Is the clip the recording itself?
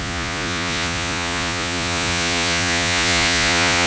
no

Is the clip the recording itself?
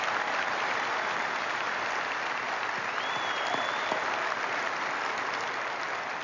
yes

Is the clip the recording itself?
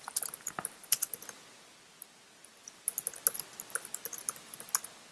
yes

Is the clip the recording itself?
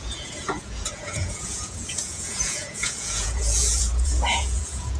no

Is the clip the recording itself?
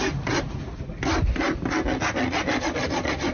yes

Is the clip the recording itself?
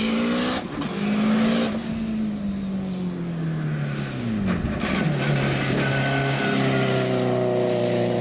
yes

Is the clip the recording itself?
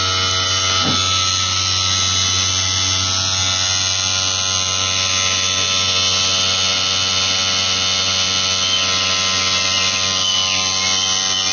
yes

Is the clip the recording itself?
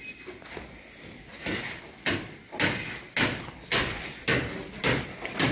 yes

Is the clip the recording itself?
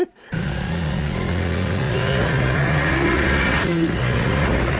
no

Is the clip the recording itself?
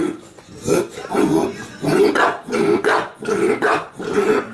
no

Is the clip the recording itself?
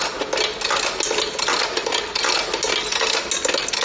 yes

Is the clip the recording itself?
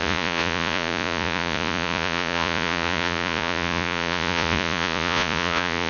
no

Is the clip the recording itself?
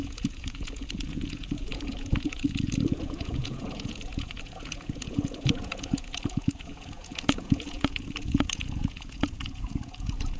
no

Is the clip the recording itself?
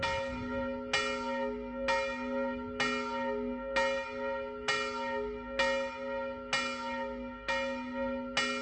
yes